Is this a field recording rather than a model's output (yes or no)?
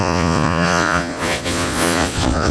no